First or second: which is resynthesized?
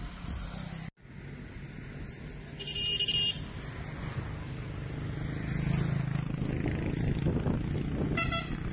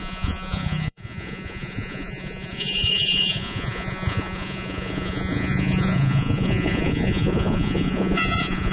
second